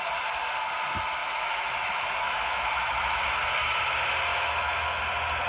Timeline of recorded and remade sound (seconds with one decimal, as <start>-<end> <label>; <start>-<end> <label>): 0.0-1.2 recorded; 1.2-3.8 remade; 3.8-4.3 recorded; 4.3-5.0 remade; 5.0-5.5 recorded